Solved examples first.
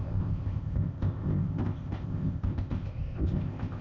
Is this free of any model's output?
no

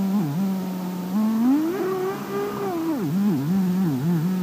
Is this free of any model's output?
yes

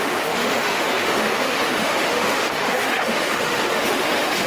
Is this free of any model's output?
no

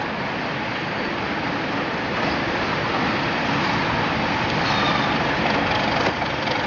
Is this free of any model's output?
yes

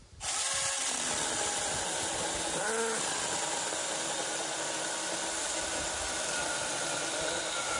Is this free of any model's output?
yes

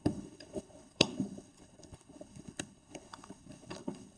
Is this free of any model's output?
no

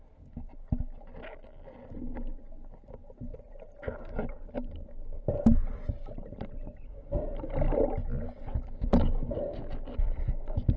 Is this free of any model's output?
yes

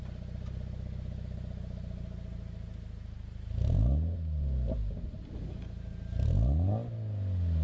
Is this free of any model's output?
yes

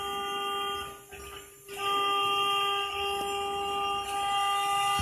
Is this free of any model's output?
yes